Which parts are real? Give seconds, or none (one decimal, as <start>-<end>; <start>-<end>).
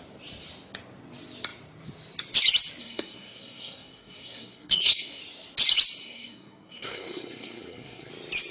0.0-2.8; 5.2-6.0; 8.1-8.5